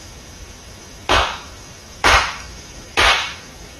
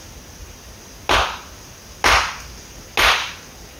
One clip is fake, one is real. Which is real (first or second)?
second